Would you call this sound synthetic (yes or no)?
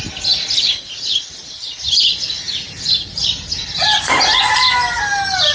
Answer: no